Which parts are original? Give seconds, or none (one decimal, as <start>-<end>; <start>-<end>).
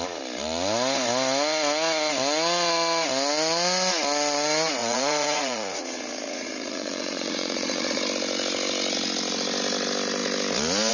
0.0-4.8; 8.0-10.9